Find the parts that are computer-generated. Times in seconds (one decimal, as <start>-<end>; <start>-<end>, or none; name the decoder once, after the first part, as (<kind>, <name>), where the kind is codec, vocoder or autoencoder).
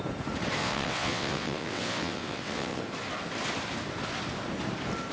0.6-2.8 (vocoder, WaveNeXt)